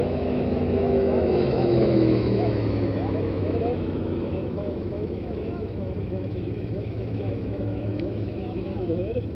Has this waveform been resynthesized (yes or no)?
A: yes